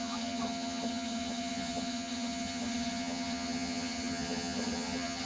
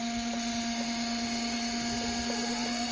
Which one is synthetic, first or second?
first